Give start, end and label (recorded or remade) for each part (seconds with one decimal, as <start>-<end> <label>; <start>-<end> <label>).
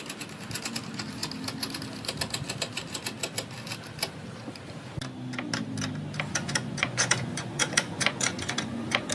0.0-6.3 recorded; 6.3-9.1 remade